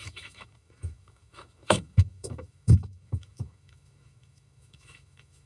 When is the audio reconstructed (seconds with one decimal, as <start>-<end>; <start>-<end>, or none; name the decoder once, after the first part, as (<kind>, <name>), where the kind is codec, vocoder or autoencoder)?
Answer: 0.0-5.5 (autoencoder, DAC-VAE)